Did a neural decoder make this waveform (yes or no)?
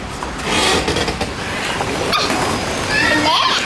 no